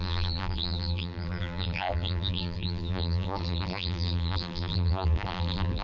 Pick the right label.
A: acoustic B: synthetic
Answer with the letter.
B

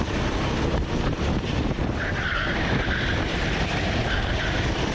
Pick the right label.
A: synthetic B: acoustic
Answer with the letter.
B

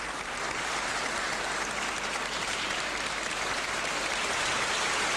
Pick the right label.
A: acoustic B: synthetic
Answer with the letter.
A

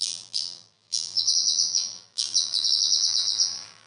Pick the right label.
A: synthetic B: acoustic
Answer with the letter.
A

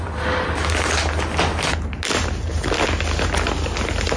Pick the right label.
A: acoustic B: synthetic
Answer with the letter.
A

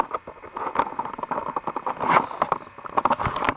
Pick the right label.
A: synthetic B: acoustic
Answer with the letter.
B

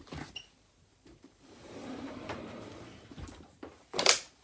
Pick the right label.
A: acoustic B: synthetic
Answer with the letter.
B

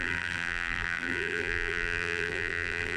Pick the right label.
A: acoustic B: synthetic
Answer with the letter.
B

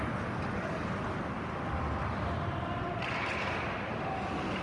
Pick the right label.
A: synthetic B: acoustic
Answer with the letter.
B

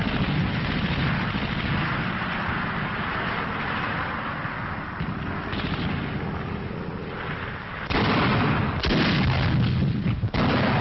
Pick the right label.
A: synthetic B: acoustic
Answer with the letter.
B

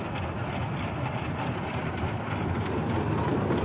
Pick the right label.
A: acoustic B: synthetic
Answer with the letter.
A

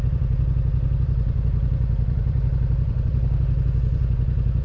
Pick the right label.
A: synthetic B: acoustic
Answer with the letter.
A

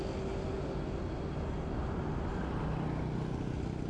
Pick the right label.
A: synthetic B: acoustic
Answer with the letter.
B